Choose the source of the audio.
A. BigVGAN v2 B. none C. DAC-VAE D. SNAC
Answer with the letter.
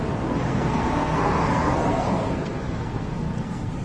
D